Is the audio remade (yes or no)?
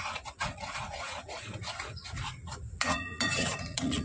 yes